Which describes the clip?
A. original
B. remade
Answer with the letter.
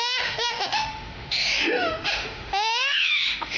B